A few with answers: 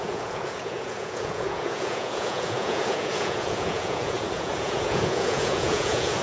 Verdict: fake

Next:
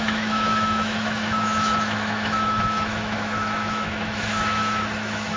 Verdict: fake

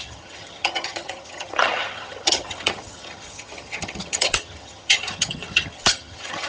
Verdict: fake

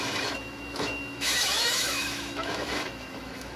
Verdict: fake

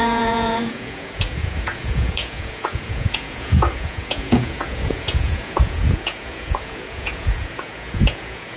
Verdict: fake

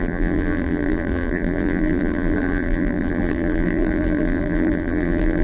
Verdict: fake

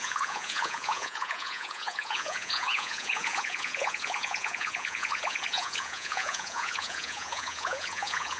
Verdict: fake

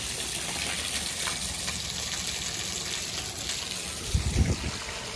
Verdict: real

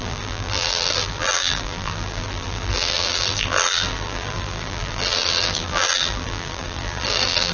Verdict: fake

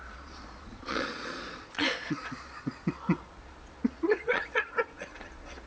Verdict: fake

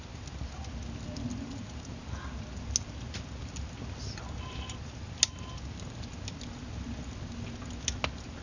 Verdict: real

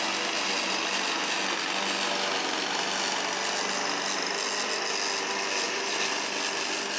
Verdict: real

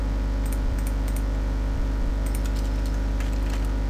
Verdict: fake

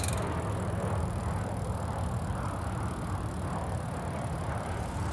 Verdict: real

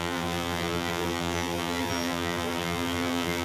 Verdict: fake